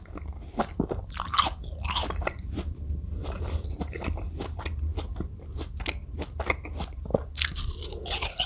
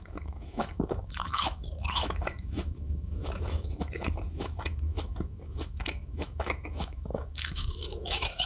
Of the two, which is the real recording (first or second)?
first